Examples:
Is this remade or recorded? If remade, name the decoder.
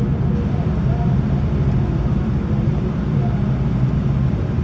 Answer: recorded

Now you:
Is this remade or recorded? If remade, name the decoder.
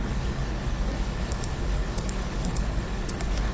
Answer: remade, codec, HILCodec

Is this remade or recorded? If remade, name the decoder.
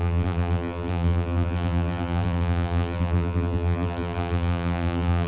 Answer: remade, vocoder, BigVGAN v2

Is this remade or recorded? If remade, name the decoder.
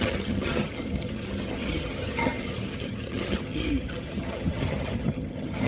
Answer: remade, vocoder, HiFi-GAN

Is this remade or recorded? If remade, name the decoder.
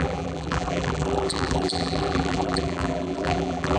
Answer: remade, vocoder, BigVGAN v2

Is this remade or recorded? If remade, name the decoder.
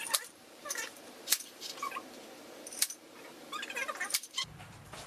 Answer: remade, vocoder, BigVGAN v2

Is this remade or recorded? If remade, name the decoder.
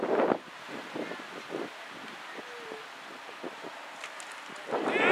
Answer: recorded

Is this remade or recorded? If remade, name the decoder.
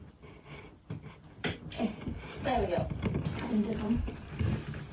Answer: recorded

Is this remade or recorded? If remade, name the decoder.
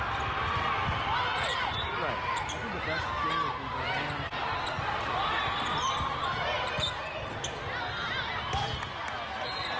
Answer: recorded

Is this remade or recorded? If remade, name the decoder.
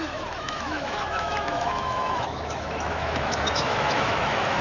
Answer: remade, autoencoder, DAC-VAE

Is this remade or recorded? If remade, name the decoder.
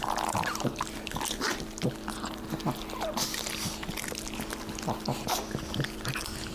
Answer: recorded